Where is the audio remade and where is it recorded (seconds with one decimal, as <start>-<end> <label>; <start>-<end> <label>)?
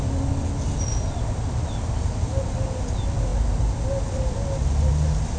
0.0-5.4 recorded